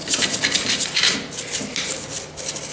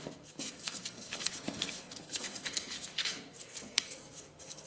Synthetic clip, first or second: second